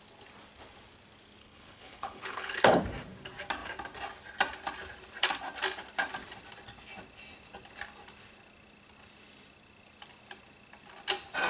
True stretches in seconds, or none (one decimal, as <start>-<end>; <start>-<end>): 0.0-1.4; 2.8-11.5